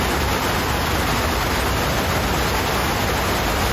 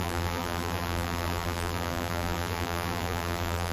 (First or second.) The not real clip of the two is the second